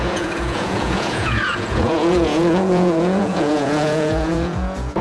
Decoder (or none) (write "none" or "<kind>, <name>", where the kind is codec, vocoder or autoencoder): vocoder, Vocos